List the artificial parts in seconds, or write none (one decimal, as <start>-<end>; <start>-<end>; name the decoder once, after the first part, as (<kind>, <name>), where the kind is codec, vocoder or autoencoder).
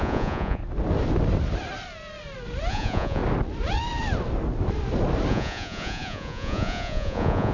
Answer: 0.0-0.6 (vocoder, Vocos); 2.7-3.2; 5.3-7.5